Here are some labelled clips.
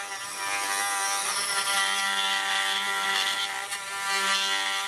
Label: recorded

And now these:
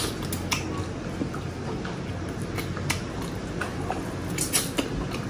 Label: recorded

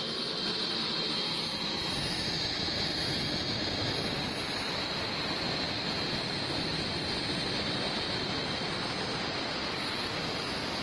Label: recorded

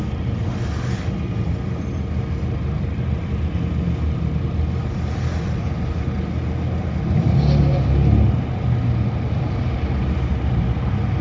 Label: recorded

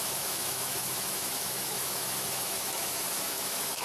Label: remade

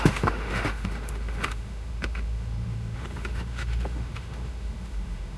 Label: remade